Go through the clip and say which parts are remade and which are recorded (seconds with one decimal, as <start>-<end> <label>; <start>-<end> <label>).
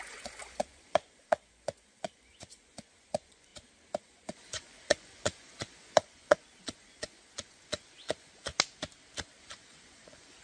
0.0-3.5 remade; 3.5-4.0 recorded; 4.0-8.5 remade; 8.5-9.4 recorded; 9.4-10.4 remade